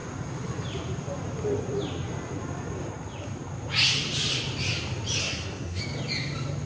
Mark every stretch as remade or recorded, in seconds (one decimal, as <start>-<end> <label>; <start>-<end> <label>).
0.0-5.2 recorded; 5.2-5.8 remade; 5.8-6.7 recorded